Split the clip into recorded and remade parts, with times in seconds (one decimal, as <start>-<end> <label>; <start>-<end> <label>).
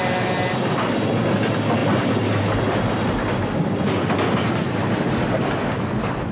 0.0-6.3 recorded